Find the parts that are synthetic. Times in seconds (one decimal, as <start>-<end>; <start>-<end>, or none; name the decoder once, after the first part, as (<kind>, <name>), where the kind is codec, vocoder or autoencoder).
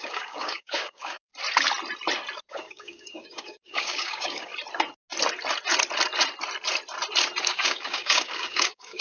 0.0-1.3 (codec, DAC); 2.5-4.5; 7.4-9.0